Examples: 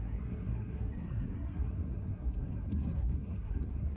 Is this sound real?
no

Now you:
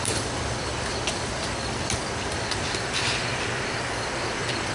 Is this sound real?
no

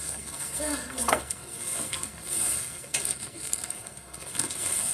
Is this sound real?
no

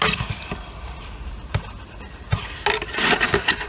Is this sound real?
yes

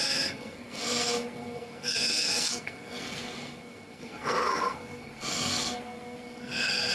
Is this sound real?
no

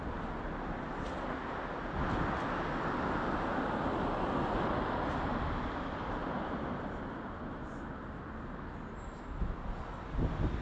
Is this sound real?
yes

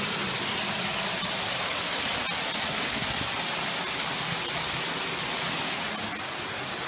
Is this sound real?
yes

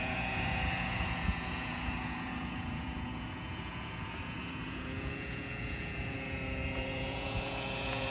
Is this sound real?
no